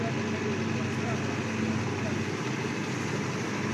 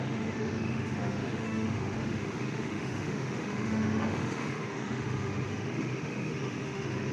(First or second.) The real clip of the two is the first